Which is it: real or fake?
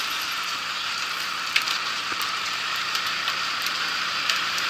fake